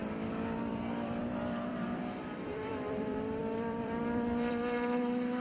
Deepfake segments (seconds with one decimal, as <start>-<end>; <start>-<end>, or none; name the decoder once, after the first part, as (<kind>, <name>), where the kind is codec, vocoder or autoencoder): 0.6-5.4 (vocoder, BigVGAN v2)